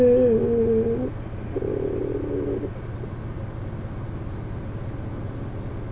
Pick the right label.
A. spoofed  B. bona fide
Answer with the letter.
B